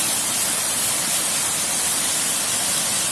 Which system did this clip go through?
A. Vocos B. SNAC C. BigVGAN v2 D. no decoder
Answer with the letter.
D